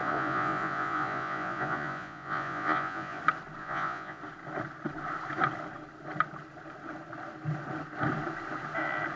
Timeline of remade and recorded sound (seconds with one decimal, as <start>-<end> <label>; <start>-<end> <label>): 0.0-3.2 remade; 3.2-3.6 recorded; 3.6-4.2 remade; 4.2-9.2 recorded